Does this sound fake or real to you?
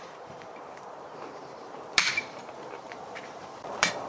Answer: fake